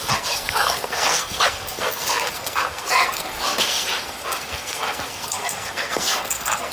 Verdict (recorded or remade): remade